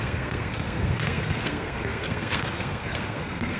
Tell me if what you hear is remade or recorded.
remade